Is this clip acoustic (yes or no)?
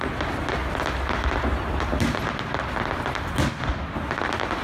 yes